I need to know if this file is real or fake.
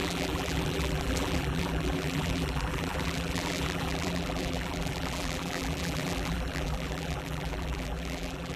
fake